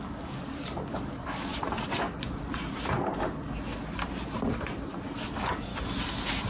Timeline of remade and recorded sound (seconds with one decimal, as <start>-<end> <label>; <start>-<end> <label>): 0.0-1.5 remade; 1.5-5.3 recorded; 5.3-5.7 remade; 5.7-6.5 recorded